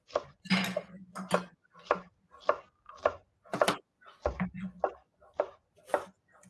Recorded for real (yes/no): yes